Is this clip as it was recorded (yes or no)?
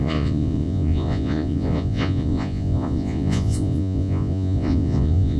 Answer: no